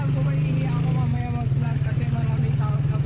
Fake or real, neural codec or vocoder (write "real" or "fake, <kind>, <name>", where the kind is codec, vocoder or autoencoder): real